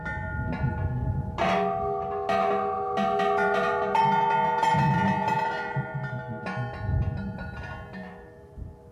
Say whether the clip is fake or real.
real